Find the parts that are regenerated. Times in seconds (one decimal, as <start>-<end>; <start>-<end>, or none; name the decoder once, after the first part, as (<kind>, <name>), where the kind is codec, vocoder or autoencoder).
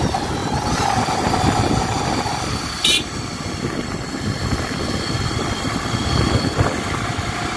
none